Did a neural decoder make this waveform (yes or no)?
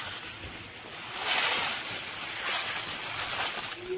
no